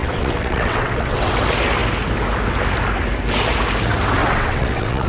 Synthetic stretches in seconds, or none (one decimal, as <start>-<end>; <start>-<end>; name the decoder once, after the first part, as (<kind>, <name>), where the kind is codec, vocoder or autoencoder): 0.0-1.3 (vocoder, WaveNeXt); 4.2-5.1